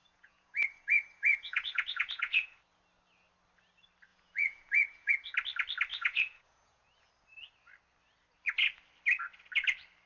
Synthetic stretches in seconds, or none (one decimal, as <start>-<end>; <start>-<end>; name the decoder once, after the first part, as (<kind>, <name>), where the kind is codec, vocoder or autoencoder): 0.0-2.6 (vocoder, Vocos); 4.1-5.1; 5.9-7.1